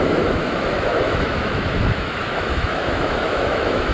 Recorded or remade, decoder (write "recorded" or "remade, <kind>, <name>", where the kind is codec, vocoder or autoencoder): remade, autoencoder, DAC-VAE